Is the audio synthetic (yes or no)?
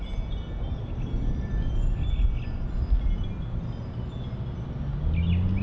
no